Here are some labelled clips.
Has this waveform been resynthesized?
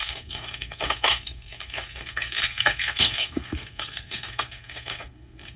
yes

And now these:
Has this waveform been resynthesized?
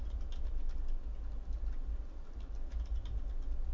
no